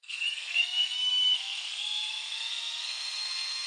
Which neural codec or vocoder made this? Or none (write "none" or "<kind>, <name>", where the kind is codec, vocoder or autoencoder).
codec, SNAC